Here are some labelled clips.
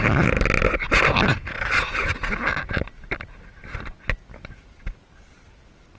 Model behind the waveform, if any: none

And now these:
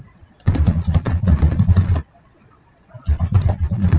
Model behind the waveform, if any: vocoder, Vocos